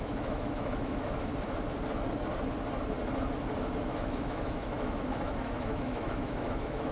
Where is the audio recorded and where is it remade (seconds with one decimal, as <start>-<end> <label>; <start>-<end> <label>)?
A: 0.0-1.3 remade; 1.3-3.8 recorded; 3.8-6.9 remade